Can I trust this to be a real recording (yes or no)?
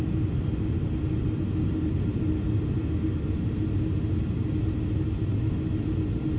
yes